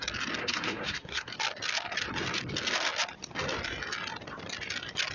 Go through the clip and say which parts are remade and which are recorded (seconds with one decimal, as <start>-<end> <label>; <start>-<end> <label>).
0.0-0.4 recorded; 0.4-1.3 remade; 1.3-5.1 recorded